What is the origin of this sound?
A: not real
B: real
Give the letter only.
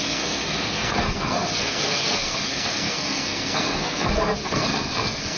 A